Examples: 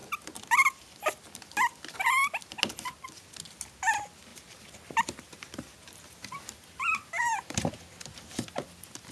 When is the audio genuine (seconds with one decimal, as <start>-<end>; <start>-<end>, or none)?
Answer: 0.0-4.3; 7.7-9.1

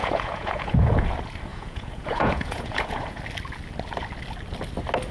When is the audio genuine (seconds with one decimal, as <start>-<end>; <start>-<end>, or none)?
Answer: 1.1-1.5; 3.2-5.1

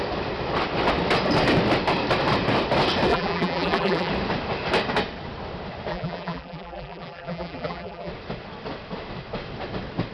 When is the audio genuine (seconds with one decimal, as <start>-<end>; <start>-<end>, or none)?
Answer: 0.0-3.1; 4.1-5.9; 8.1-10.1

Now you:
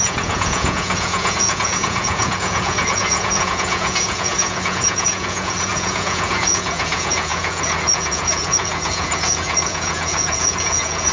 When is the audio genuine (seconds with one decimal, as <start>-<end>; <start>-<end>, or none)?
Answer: none

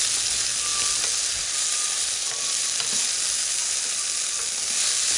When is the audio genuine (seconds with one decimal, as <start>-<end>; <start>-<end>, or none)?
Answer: 0.0-5.2

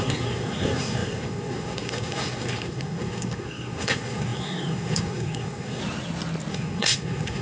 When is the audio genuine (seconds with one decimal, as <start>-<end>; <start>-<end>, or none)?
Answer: 5.8-6.5

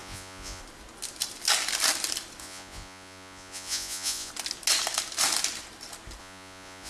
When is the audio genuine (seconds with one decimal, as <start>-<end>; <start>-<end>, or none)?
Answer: 0.6-2.4; 4.3-6.2